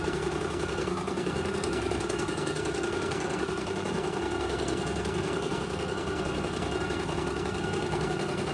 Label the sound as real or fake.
fake